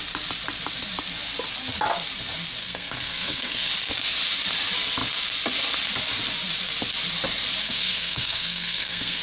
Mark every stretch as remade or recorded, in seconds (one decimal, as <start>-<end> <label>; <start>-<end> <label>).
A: 0.0-2.6 recorded; 2.6-3.7 remade; 3.7-7.6 recorded; 7.6-9.2 remade